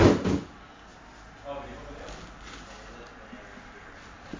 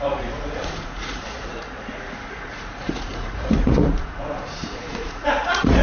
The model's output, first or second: second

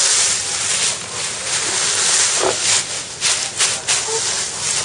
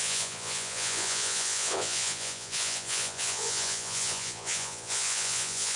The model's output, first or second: second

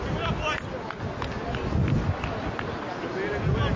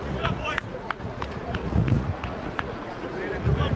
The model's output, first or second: second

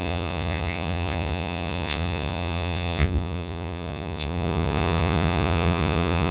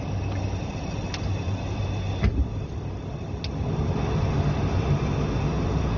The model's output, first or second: first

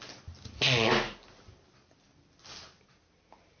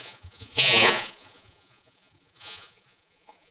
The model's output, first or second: second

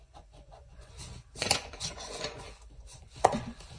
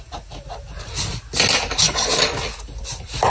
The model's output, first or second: first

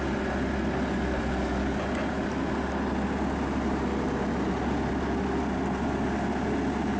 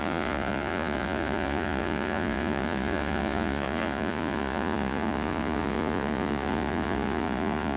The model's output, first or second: second